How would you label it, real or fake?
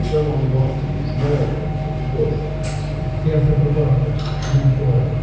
real